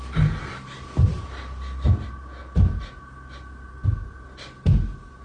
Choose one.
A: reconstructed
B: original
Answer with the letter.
B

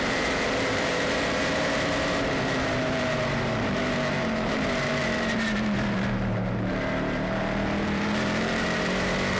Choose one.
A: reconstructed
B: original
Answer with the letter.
A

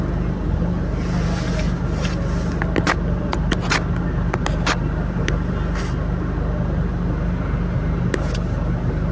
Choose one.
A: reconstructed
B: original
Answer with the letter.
B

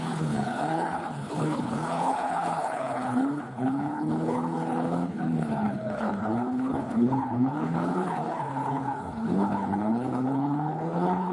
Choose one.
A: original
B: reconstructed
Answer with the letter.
B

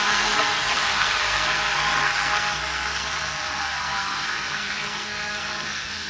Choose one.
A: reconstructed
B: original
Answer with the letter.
A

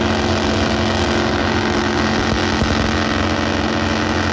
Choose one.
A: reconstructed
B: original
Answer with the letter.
B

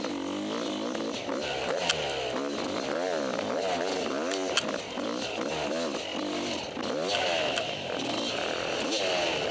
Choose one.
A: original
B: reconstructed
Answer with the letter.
A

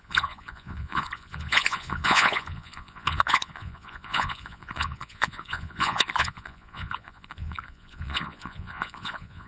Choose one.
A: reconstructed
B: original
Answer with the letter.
A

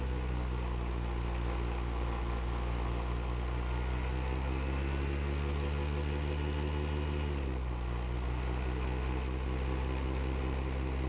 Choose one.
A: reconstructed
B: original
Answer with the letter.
B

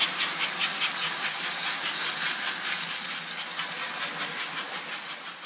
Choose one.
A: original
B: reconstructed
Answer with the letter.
A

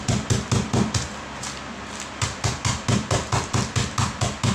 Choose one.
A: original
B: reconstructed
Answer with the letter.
A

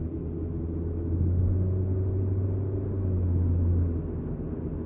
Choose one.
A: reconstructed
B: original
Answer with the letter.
B